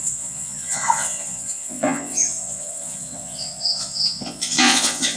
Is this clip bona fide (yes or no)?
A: no